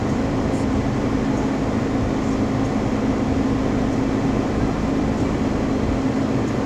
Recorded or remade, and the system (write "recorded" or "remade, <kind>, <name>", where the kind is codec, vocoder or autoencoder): recorded